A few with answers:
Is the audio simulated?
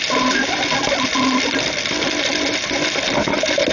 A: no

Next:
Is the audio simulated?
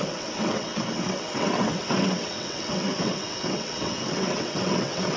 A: yes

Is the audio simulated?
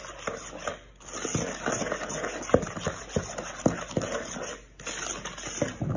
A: no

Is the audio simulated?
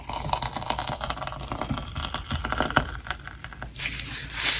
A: no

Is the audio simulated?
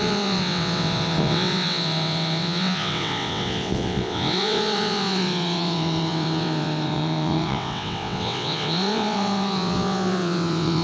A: yes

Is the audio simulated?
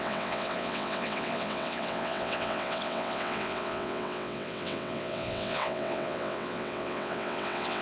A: yes